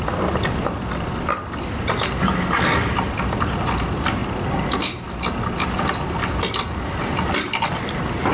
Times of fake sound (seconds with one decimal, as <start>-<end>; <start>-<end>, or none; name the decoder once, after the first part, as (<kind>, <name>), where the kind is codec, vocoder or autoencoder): none